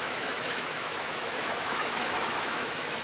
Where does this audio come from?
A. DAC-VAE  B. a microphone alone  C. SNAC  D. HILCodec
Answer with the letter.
A